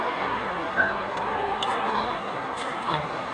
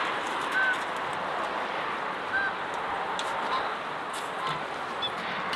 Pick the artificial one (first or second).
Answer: first